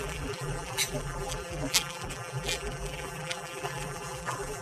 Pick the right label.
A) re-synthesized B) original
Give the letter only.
A